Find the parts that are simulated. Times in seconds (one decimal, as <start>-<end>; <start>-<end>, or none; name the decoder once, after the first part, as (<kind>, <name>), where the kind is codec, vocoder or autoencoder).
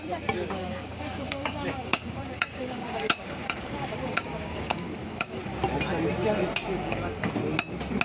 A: 0.6-5.4 (codec, DAC); 6.7-7.3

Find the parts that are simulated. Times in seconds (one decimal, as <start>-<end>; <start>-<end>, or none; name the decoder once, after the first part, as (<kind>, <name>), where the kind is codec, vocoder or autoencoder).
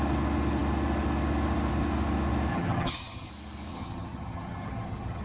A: 2.5-3.3 (vocoder, HiFi-GAN); 3.7-5.2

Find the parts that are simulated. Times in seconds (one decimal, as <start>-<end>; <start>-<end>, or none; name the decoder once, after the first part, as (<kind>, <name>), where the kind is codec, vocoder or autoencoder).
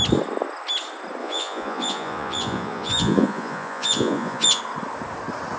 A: 1.2-4.6 (vocoder, Vocos)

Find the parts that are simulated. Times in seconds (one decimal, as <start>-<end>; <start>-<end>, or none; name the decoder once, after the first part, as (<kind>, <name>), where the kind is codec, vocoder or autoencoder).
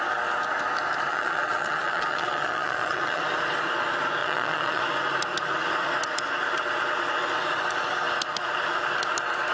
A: 1.1-3.2 (vocoder, Vocos); 4.2-4.8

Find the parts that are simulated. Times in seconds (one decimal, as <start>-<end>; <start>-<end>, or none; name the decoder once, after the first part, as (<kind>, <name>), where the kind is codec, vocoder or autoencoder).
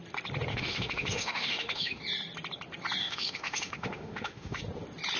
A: 0.5-2.0 (autoencoder, DAC-VAE); 3.0-4.6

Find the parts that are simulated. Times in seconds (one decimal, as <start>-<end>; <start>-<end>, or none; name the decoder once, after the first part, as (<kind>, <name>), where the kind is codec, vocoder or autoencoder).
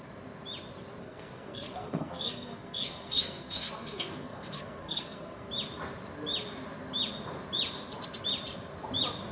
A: 1.0-5.5 (codec, SNAC)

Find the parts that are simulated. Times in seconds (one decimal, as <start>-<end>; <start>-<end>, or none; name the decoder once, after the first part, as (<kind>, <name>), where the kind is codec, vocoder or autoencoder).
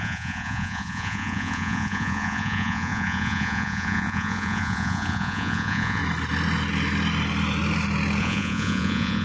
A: 0.0-6.0 (vocoder, Vocos); 8.2-9.2